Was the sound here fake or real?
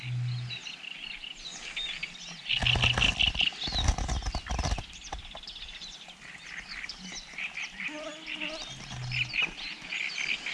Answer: real